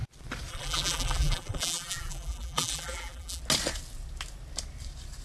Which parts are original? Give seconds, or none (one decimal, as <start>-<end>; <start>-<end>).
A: 0.0-0.5; 3.4-5.2